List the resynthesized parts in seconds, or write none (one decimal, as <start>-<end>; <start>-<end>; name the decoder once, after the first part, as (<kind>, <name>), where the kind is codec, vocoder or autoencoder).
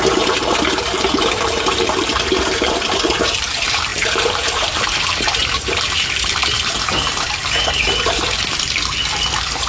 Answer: 0.0-9.7 (vocoder, BigVGAN v2)